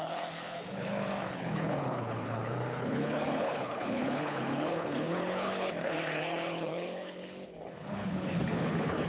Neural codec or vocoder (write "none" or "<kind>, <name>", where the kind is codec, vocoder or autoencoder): codec, HILCodec